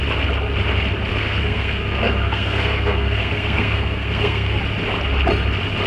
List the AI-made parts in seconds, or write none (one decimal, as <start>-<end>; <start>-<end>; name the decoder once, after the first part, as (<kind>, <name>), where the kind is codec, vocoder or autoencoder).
1.1-4.6 (codec, SNAC)